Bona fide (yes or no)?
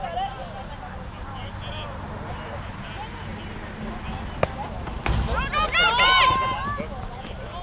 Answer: yes